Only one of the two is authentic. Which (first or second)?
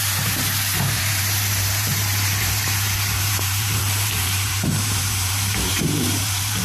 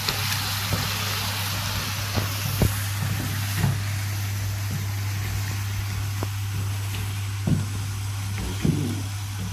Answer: second